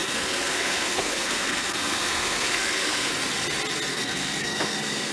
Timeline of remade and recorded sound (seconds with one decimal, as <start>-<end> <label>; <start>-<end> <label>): 0.0-3.1 remade; 3.1-3.9 recorded; 3.9-5.1 remade